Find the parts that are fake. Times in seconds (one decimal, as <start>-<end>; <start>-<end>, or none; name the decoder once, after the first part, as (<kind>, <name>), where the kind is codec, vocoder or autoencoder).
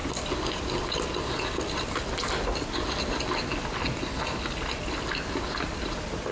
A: none